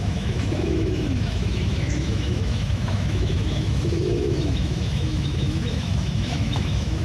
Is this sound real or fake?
fake